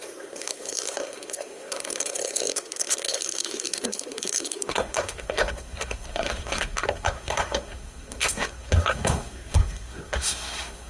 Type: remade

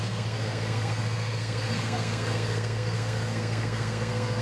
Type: remade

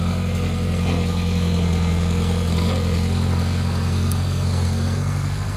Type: remade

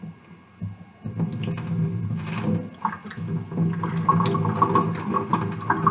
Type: recorded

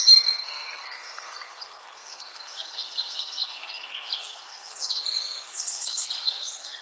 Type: remade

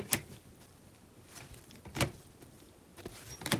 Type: recorded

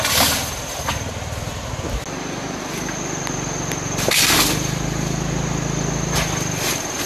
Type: recorded